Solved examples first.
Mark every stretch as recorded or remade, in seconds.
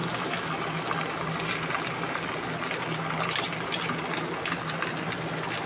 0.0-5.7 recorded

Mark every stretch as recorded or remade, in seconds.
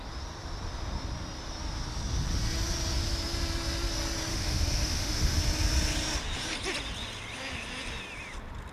0.0-4.3 recorded; 4.3-5.4 remade; 5.4-8.7 recorded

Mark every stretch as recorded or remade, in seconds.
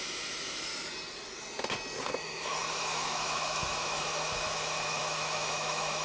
0.0-0.7 remade; 0.7-2.2 recorded; 2.2-6.0 remade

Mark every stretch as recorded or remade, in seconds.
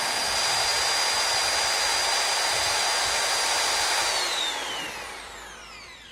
0.0-6.1 recorded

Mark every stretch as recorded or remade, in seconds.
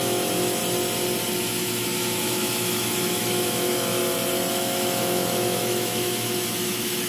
0.0-0.6 remade; 0.6-1.4 recorded; 1.4-4.0 remade; 4.0-4.5 recorded; 4.5-7.1 remade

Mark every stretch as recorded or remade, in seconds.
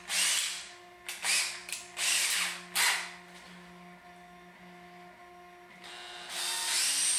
0.0-7.2 recorded